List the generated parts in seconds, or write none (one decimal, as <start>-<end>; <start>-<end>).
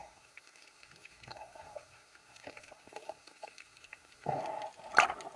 0.0-4.4